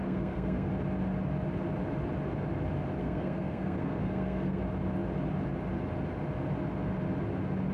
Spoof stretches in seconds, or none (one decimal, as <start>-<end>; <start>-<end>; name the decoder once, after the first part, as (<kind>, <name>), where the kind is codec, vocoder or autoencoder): 0.0-0.7 (codec, SNAC); 3.0-4.6